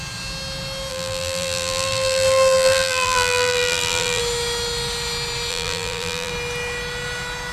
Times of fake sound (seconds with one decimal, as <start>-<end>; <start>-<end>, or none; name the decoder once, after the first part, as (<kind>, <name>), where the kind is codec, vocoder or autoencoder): 0.9-4.2 (vocoder, BigVGAN v2); 5.5-6.3